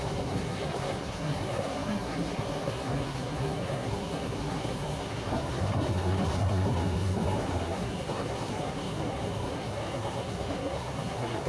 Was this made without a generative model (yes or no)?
no